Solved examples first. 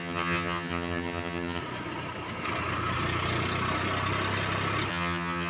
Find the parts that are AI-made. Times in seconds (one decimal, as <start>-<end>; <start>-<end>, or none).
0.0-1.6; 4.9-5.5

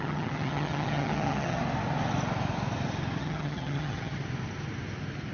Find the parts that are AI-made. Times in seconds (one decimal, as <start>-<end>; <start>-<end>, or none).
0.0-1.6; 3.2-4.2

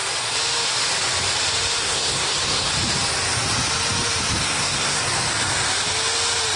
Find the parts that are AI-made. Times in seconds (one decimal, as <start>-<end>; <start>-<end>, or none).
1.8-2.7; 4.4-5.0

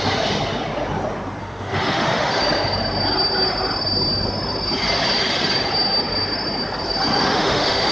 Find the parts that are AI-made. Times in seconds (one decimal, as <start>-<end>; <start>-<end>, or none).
1.4-2.4; 7.1-7.9

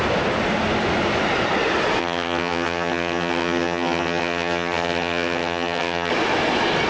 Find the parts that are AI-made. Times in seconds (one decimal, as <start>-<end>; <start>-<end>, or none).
2.0-6.1

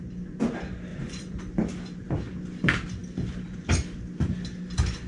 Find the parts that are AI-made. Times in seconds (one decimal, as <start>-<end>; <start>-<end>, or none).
0.9-1.4

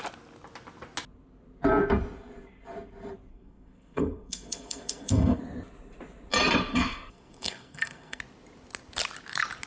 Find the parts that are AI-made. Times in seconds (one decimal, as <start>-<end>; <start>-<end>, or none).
3.3-5.4; 6.7-8.2

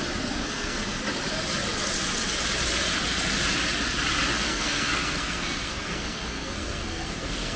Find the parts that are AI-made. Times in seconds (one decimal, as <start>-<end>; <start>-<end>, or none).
0.4-1.0; 4.3-7.6